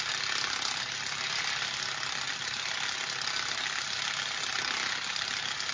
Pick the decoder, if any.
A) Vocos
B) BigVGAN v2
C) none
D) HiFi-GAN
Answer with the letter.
B